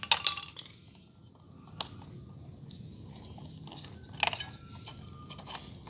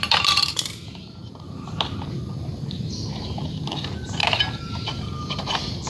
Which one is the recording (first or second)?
first